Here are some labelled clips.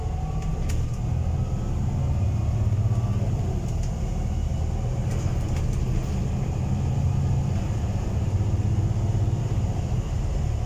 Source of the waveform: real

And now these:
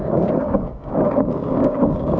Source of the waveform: fake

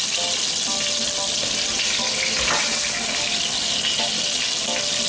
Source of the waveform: real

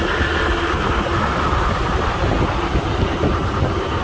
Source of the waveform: real